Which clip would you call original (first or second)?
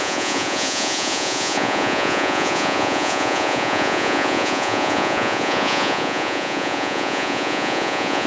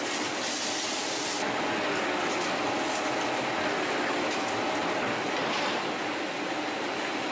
second